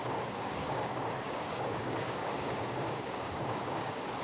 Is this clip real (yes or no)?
no